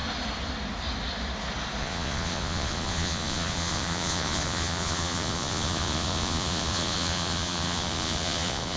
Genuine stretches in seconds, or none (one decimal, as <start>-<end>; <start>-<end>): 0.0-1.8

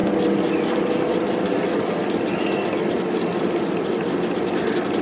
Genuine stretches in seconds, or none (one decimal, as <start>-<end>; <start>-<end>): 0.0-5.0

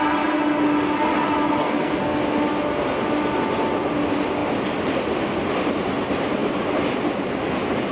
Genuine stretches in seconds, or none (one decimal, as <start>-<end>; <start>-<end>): 0.0-1.6; 2.2-7.9

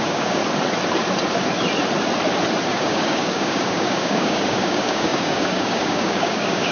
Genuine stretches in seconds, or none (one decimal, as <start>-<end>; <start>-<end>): 0.4-2.7

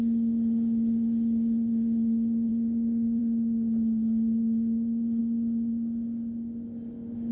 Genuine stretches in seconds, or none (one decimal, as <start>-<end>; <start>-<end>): 0.0-7.3

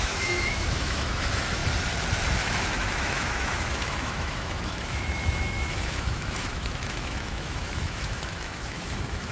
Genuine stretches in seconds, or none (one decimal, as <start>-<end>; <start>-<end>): 1.6-2.4

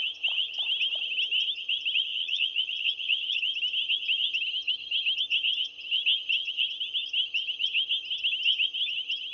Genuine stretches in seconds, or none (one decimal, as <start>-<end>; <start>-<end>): 0.0-2.1; 3.4-9.3

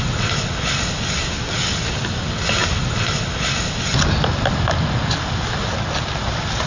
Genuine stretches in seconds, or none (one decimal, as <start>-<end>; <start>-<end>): 0.0-6.7